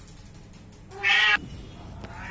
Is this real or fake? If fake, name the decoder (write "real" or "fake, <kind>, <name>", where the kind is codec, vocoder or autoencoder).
real